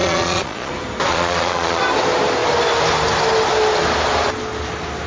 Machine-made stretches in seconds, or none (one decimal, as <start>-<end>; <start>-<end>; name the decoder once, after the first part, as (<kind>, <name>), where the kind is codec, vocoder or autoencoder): 0.0-0.7 (vocoder, Vocos); 1.1-1.8